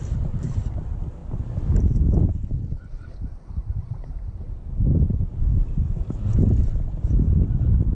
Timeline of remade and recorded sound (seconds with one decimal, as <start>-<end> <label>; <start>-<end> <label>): 0.0-1.2 remade; 1.2-3.8 recorded; 3.8-7.9 remade